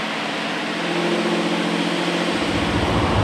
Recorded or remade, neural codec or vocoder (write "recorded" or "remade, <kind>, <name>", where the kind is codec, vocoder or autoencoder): recorded